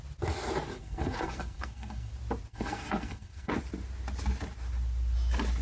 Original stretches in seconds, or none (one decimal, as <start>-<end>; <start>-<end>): 0.0-0.8; 2.1-2.5; 3.5-5.6